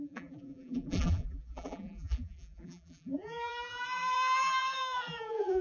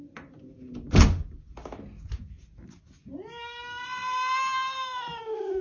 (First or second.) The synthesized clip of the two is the first